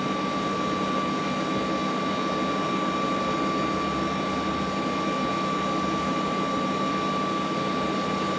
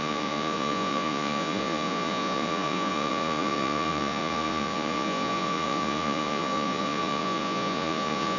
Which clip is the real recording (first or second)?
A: first